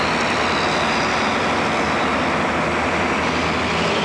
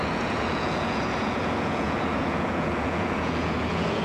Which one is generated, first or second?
second